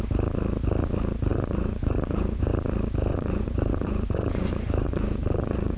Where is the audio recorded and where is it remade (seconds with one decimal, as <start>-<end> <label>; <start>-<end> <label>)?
0.0-1.3 recorded; 1.3-2.5 remade; 2.5-3.1 recorded; 3.1-5.8 remade